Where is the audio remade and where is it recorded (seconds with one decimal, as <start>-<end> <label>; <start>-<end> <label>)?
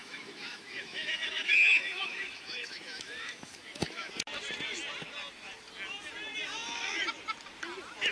0.0-4.1 remade; 4.1-8.1 recorded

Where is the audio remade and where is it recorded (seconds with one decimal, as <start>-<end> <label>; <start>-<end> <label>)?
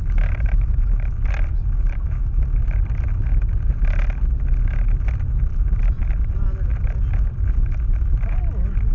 0.0-8.9 recorded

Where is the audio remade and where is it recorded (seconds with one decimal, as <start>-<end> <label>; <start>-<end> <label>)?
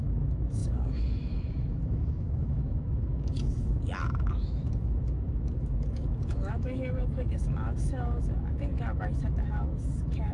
0.0-10.3 remade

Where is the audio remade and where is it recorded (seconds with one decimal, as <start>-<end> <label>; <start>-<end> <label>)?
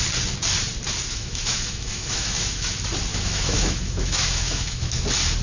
0.0-1.1 recorded; 1.1-2.7 remade; 2.7-3.1 recorded; 3.1-5.0 remade; 5.0-5.4 recorded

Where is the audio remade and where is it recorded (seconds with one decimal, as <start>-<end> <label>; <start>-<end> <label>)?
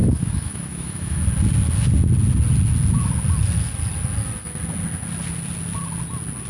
0.0-1.2 remade; 1.2-6.5 recorded